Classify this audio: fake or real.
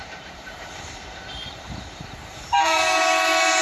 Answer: fake